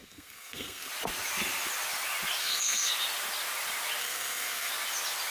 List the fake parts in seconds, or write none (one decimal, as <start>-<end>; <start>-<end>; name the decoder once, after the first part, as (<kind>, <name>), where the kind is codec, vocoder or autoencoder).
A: 0.0-0.9 (codec, SNAC); 2.4-2.9; 4.0-4.7